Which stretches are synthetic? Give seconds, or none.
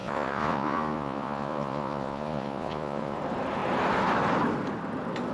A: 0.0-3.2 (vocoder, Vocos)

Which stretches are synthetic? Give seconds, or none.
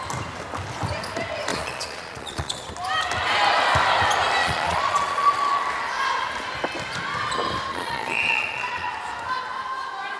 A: 1.5-2.7 (vocoder, Vocos); 4.4-5.6; 7.7-8.9